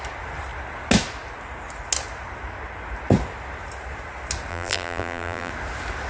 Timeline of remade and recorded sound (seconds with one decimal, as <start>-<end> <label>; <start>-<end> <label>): 0.0-4.5 recorded; 4.5-5.5 remade; 5.5-6.1 recorded